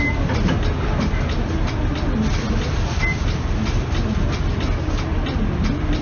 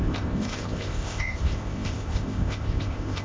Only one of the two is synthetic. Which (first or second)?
second